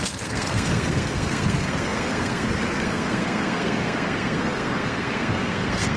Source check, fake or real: fake